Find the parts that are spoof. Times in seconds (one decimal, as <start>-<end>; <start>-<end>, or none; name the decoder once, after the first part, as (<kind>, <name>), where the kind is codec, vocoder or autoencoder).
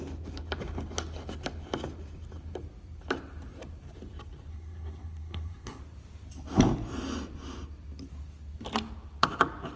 4.5-5.8 (codec, SNAC)